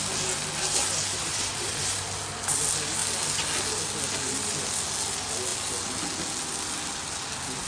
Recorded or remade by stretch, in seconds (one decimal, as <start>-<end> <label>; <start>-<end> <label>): 0.0-1.2 recorded; 1.2-1.8 remade; 1.8-7.7 recorded